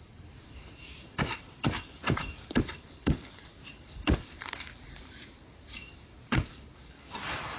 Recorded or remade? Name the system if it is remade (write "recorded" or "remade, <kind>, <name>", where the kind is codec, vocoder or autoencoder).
remade, vocoder, BigVGAN v2